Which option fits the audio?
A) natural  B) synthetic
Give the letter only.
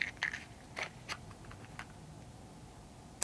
A